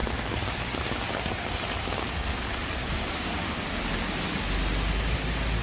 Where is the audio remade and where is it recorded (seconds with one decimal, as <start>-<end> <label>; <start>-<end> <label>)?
0.0-2.8 recorded; 2.8-3.7 remade; 3.7-5.6 recorded